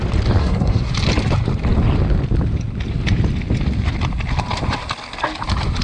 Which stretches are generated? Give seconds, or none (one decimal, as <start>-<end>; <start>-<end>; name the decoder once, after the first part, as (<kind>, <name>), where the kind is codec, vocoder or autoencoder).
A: 0.4-0.9 (codec, SNAC)